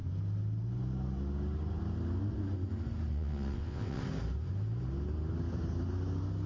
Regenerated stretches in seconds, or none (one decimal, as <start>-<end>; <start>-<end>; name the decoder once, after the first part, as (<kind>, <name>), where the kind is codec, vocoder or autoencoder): 3.1-4.0 (vocoder, WaveNeXt)